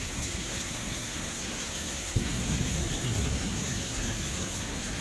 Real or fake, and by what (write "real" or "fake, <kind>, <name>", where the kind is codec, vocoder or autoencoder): fake, codec, SNAC